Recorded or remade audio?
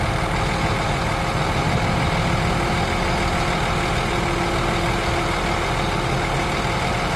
recorded